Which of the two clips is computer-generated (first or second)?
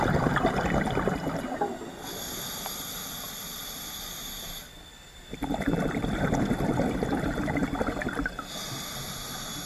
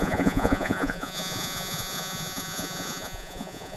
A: second